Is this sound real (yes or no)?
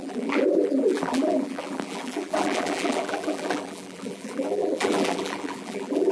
no